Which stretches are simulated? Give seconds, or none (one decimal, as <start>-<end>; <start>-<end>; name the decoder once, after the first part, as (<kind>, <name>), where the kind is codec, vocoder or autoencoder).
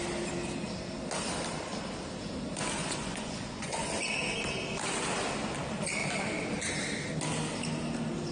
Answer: 2.8-3.9 (vocoder, Vocos)